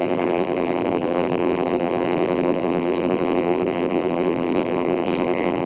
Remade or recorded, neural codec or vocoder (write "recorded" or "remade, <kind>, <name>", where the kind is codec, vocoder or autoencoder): remade, vocoder, BigVGAN v2